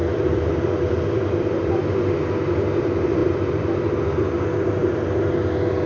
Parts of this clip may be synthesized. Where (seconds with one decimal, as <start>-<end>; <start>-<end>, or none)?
0.0-1.7; 3.2-3.8; 4.8-5.3